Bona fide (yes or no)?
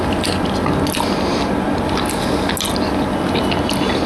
yes